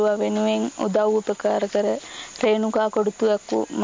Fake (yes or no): no